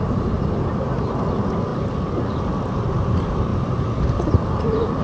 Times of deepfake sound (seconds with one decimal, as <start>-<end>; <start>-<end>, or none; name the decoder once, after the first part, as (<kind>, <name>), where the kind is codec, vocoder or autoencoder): 0.0-5.0 (vocoder, BigVGAN v2)